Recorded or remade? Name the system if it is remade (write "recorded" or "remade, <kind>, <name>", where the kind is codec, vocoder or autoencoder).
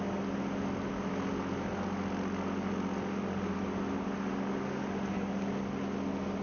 recorded